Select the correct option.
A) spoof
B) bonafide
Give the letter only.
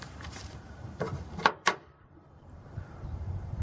A